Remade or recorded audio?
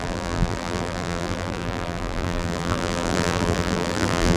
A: remade